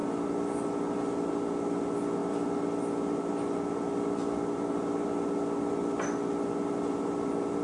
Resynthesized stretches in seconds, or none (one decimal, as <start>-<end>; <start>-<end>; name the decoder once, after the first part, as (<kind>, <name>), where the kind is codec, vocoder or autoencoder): none